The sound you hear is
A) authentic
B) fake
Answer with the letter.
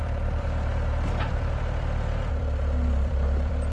B